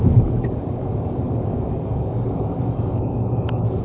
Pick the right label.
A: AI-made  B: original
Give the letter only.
A